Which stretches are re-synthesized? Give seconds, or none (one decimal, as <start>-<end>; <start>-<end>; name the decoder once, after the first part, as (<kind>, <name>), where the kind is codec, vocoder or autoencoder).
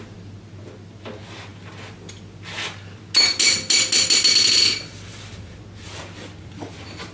none